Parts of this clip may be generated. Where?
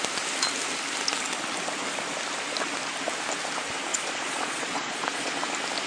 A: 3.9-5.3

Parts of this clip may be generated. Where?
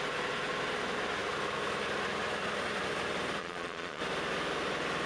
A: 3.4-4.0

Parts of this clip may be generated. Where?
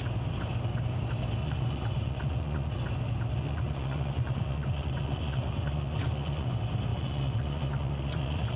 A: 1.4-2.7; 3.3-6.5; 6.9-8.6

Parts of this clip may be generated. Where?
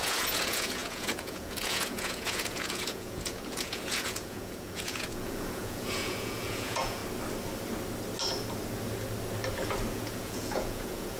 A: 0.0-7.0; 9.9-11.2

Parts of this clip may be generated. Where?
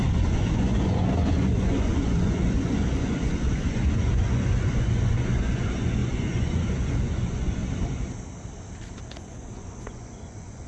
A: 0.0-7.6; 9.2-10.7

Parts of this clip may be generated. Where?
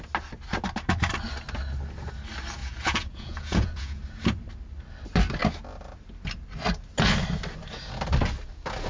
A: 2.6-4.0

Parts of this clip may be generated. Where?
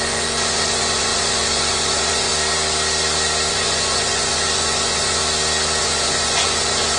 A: 0.0-2.3; 3.5-5.2; 5.8-7.0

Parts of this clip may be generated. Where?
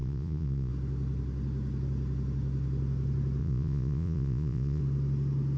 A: 0.0-0.7; 3.4-4.8